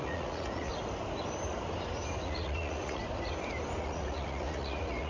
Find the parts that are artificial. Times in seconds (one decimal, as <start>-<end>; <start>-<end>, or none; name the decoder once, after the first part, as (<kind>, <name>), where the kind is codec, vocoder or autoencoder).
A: 0.0-0.7 (vocoder, Vocos); 2.2-3.0; 3.8-5.1